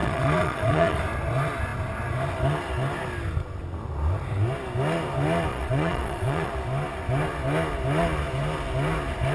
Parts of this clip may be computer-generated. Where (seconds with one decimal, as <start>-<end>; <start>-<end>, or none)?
0.0-1.0; 5.5-6.5